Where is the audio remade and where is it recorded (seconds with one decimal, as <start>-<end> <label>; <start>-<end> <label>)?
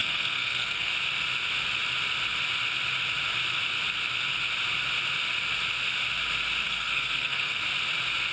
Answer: 0.0-0.9 remade; 0.9-6.6 recorded; 6.6-7.6 remade; 7.6-8.3 recorded